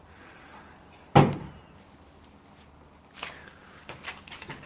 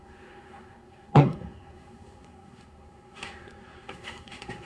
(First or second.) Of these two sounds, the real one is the first